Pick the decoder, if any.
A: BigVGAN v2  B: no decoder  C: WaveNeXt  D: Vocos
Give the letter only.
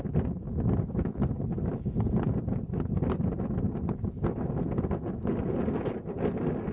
B